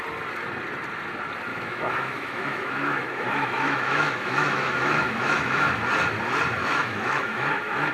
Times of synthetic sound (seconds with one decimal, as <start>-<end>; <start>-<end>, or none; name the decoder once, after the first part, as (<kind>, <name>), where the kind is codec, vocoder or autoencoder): 1.5-5.8 (autoencoder, DAC-VAE); 6.6-7.9